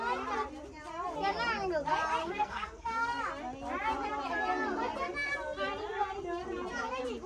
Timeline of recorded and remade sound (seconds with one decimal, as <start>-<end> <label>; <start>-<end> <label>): 0.0-2.2 recorded; 2.2-3.2 remade; 3.2-7.3 recorded

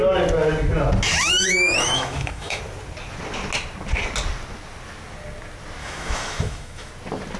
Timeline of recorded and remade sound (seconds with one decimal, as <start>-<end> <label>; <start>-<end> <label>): 0.0-1.1 recorded; 1.1-2.6 remade; 2.6-5.8 recorded; 5.8-6.9 remade; 6.9-7.4 recorded

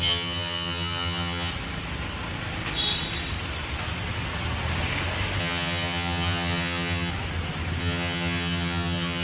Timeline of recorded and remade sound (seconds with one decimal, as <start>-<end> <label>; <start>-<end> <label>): 0.0-1.5 remade; 1.5-5.4 recorded; 5.4-7.1 remade; 7.1-7.8 recorded; 7.8-9.2 remade

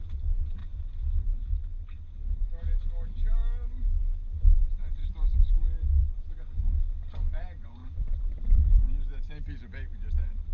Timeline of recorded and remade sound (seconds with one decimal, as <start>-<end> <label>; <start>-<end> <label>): 0.0-0.6 recorded; 0.6-1.8 remade; 1.8-3.4 recorded; 3.4-4.0 remade; 4.0-5.0 recorded; 5.0-6.6 remade; 6.6-7.8 recorded; 7.8-8.8 remade; 8.8-10.5 recorded

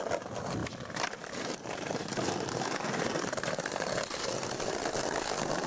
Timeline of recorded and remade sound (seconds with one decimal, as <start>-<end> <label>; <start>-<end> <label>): 0.0-0.6 recorded; 0.6-3.9 remade; 3.9-5.7 recorded

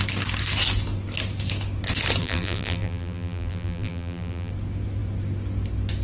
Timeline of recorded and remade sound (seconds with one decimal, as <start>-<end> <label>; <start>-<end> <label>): 0.0-2.2 recorded; 2.2-4.5 remade; 4.5-6.0 recorded

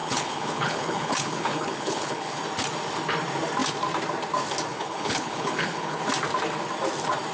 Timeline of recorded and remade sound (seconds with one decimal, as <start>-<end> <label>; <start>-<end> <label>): 0.0-2.4 remade; 2.4-4.7 recorded; 4.7-6.0 remade; 6.0-7.3 recorded